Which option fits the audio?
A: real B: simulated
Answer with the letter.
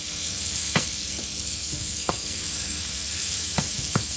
B